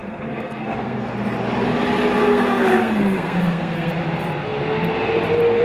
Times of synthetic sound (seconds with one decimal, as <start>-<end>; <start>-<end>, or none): 0.0-1.1; 2.2-3.9